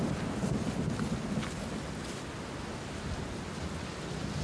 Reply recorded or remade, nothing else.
recorded